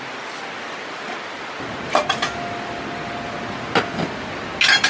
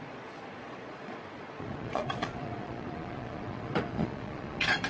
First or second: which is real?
first